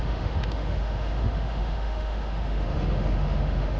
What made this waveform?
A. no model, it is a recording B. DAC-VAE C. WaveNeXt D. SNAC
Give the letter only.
B